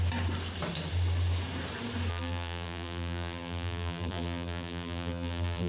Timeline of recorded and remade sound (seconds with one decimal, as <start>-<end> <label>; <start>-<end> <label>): 0.0-2.1 recorded; 2.1-5.7 remade